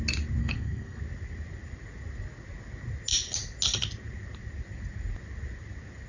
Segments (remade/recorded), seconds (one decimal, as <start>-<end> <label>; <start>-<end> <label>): 0.0-0.4 recorded; 0.4-1.0 remade; 1.0-6.1 recorded